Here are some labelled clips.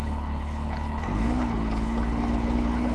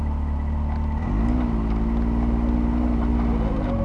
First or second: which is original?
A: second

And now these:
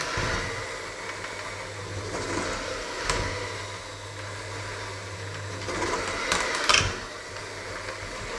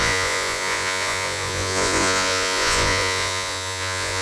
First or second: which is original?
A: first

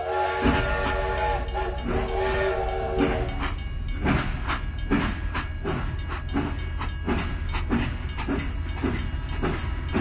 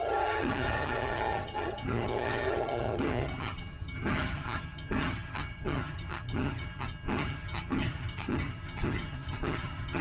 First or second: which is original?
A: first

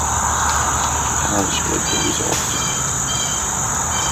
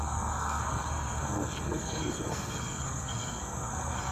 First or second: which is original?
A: first